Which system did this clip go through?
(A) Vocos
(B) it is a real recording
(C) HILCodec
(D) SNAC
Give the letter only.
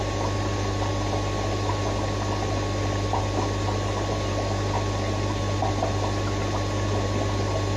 B